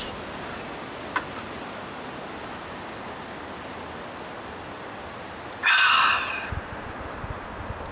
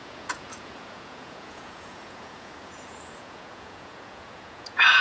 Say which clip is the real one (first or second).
first